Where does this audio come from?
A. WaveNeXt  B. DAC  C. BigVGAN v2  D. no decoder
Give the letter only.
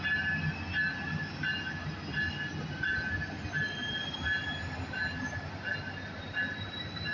D